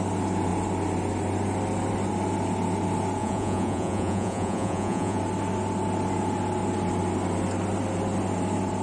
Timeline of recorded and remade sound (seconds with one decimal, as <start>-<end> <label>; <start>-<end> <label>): 0.0-3.2 recorded; 3.2-5.2 remade; 5.2-8.8 recorded